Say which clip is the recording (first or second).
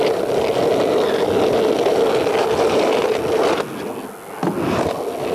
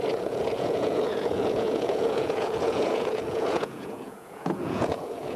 first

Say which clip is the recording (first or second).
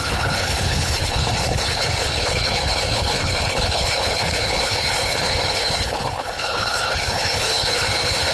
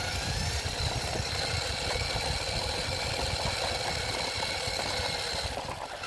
second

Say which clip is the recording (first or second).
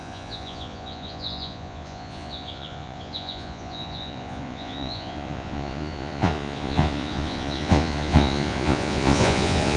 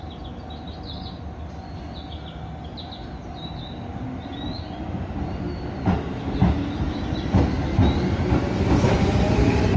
second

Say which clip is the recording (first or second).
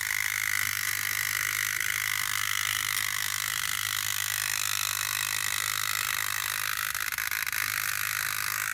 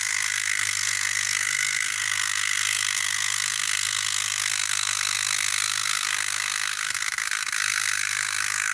first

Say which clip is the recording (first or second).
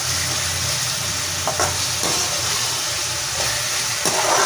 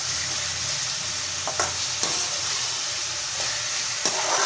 first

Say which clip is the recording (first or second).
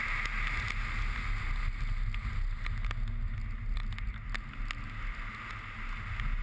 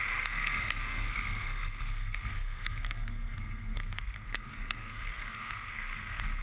first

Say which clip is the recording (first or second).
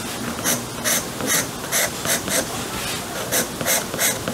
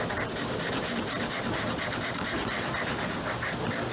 first